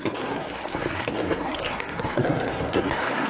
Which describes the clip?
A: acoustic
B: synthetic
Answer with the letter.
B